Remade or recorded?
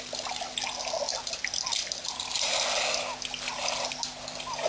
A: recorded